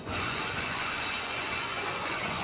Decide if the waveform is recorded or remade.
remade